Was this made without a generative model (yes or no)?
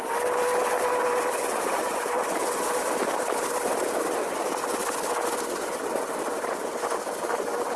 yes